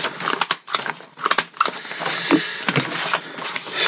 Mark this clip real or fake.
real